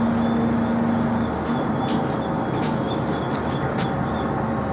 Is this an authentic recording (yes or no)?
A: yes